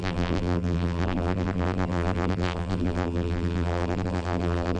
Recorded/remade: remade